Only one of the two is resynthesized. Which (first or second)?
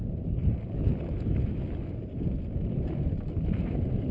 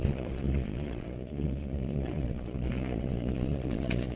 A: second